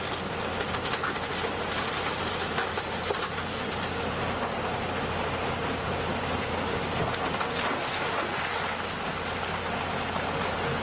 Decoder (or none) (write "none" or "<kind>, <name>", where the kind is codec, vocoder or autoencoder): none